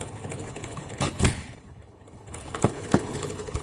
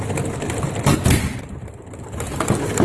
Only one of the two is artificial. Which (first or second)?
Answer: first